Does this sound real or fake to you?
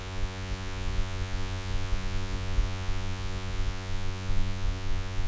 fake